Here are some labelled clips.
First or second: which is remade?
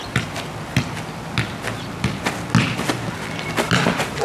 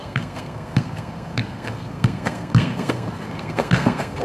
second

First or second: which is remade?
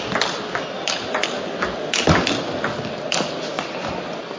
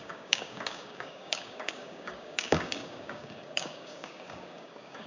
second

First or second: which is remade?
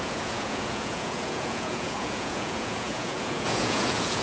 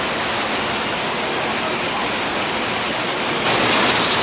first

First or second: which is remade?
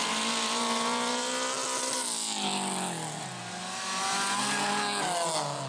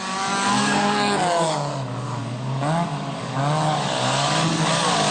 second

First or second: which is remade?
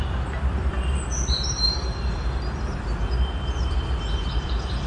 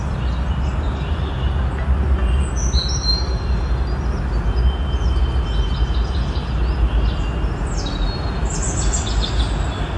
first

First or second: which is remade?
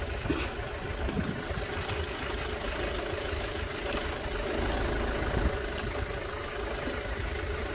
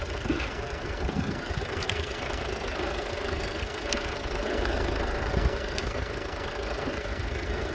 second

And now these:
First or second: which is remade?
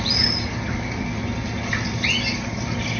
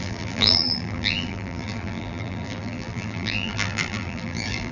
second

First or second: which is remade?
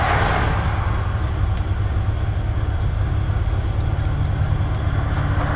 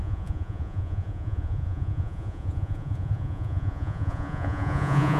second